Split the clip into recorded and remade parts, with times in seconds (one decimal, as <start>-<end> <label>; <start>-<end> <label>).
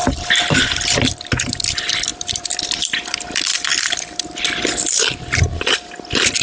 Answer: 0.0-1.5 recorded; 1.5-6.4 remade